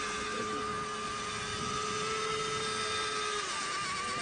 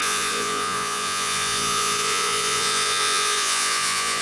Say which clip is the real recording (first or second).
first